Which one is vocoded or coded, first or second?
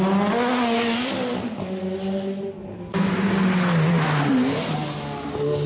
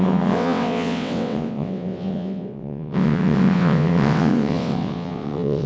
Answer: second